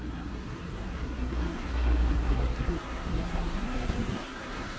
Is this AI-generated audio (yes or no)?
yes